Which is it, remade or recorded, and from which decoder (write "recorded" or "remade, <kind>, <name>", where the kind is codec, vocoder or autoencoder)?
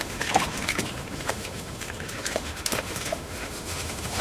remade, autoencoder, DAC-VAE